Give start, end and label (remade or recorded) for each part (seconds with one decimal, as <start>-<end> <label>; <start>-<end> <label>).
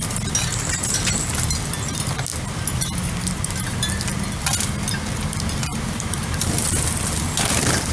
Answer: 0.0-5.7 recorded; 5.7-6.7 remade; 6.7-7.9 recorded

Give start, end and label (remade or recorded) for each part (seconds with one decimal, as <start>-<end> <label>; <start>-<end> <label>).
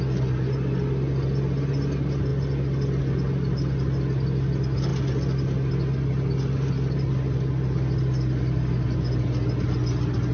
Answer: 0.0-10.3 recorded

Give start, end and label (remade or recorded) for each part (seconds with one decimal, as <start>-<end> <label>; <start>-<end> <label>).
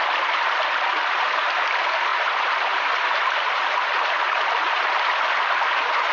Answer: 0.0-2.1 recorded; 2.1-5.1 remade; 5.1-6.1 recorded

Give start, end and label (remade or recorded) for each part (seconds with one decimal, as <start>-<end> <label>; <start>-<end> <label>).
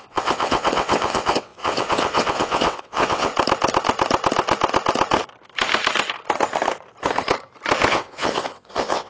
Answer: 0.0-3.3 remade; 3.3-7.9 recorded; 7.9-9.1 remade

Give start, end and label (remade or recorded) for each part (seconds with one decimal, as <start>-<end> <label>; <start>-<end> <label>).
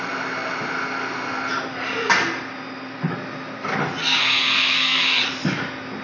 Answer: 0.0-4.0 recorded; 4.0-5.2 remade; 5.2-6.0 recorded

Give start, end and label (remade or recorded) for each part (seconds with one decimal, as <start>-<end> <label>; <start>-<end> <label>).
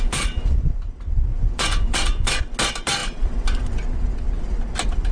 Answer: 0.0-1.3 recorded; 1.3-2.4 remade; 2.4-5.1 recorded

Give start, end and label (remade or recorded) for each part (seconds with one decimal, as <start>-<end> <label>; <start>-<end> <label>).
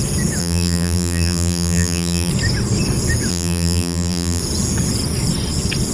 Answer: 0.0-0.4 recorded; 0.4-2.3 remade; 2.3-3.3 recorded; 3.3-4.4 remade; 4.4-5.9 recorded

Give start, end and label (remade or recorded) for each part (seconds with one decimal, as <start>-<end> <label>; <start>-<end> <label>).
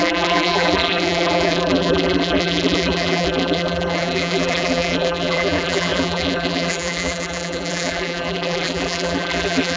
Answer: 0.0-9.8 remade